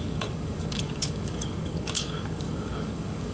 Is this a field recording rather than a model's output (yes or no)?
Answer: no